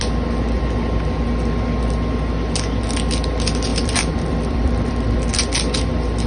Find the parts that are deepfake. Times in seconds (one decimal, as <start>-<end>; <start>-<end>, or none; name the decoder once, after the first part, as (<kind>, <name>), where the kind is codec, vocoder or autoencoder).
3.7-4.9 (vocoder, BigVGAN v2)